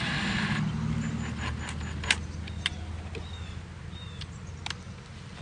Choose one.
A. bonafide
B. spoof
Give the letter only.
A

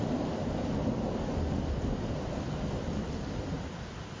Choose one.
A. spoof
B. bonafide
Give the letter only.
B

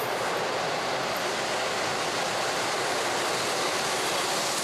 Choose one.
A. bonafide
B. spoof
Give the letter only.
A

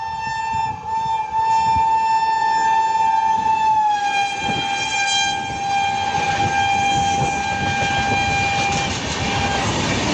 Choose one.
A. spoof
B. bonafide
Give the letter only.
B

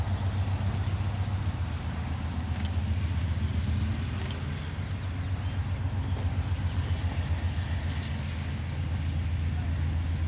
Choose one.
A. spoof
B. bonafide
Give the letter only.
B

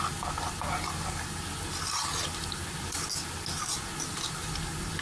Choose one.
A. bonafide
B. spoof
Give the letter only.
A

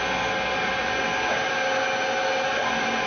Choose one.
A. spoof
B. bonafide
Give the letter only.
B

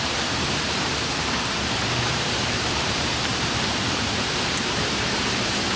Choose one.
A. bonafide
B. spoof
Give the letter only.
B